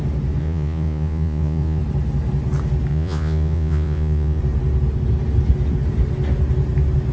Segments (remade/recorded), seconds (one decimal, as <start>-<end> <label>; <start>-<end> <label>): 0.0-0.4 recorded; 0.4-1.8 remade; 1.8-2.9 recorded; 2.9-4.4 remade; 4.4-7.1 recorded